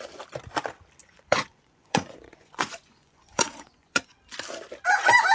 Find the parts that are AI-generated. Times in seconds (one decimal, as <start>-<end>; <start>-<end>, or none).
1.0-4.2

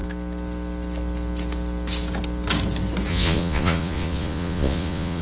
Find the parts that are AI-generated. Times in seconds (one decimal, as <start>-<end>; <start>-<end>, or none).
3.1-5.2

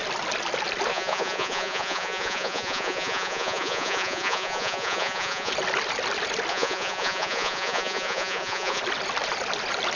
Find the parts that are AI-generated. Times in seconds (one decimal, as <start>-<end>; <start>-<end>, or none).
0.9-5.5; 6.5-8.8

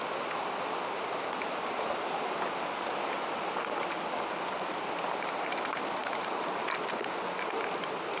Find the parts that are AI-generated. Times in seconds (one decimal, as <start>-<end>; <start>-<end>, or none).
none

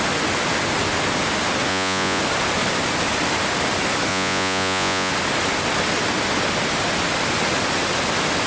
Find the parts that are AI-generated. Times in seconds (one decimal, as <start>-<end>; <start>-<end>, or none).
1.7-2.2; 4.1-5.1

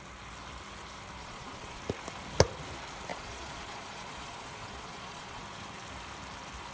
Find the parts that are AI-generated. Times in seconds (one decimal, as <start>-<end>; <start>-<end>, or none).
1.2-1.8; 3.1-5.4

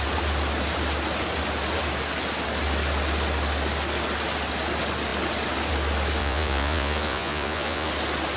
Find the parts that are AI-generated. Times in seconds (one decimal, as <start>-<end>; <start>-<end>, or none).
6.2-7.9

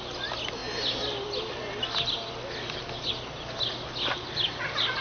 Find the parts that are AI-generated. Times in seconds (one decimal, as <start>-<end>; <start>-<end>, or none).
none